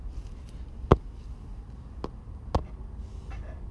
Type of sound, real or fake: real